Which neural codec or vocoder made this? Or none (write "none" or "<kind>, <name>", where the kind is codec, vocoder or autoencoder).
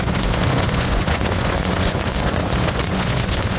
vocoder, Vocos